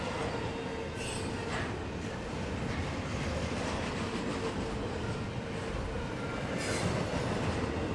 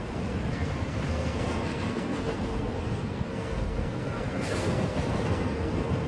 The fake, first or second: second